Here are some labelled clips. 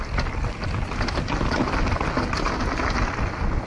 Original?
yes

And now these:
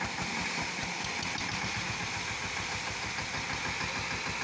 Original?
yes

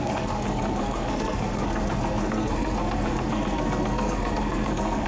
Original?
no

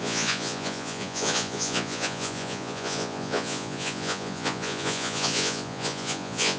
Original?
no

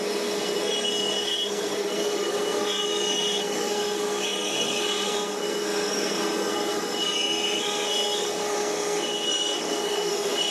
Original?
no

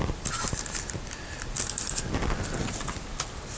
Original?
yes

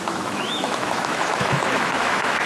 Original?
no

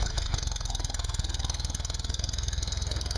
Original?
no